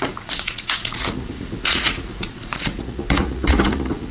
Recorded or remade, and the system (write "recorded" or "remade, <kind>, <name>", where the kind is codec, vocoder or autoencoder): remade, vocoder, Vocos